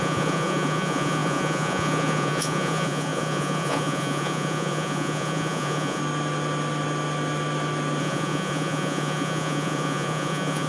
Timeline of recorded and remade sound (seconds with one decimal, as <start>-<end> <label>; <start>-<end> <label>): 0.0-6.0 remade; 6.0-8.0 recorded; 8.0-10.7 remade